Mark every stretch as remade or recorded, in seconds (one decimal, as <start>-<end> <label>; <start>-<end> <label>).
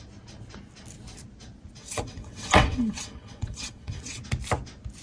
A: 0.0-1.8 recorded; 1.8-4.2 remade; 4.2-5.0 recorded